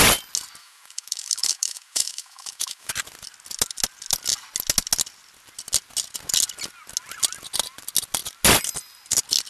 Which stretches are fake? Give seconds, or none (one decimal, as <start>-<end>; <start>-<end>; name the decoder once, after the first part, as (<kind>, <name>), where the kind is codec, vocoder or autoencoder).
0.6-2.9 (autoencoder, DAC-VAE)